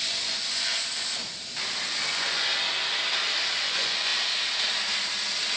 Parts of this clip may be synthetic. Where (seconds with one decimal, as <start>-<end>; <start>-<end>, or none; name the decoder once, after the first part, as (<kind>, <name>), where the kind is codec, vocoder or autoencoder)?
0.0-0.7 (vocoder, Vocos); 2.1-2.5; 3.6-4.1